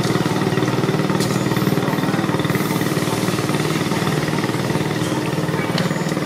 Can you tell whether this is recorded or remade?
recorded